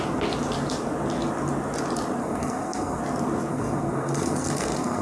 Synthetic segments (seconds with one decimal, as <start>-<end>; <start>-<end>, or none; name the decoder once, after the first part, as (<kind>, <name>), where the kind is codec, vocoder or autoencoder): 2.2-3.0 (codec, SNAC); 3.5-5.0